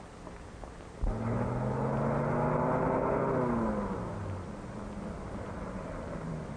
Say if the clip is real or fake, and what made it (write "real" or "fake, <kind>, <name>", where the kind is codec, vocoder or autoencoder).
real